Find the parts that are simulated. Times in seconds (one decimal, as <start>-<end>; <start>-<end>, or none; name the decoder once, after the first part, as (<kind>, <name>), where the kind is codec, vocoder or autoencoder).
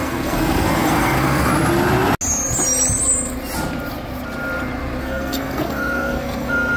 0.0-1.5 (codec, SNAC); 5.0-6.8